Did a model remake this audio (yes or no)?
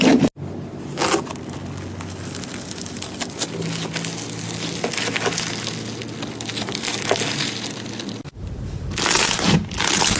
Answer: no